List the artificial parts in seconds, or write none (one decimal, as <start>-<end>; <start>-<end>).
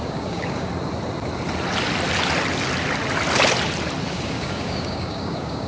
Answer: 0.0-0.7; 4.1-5.7